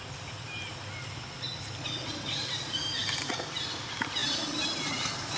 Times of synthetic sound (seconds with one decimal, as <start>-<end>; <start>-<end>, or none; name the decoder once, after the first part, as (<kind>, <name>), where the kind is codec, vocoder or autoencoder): none